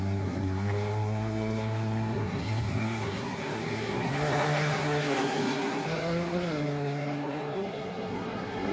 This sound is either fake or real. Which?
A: fake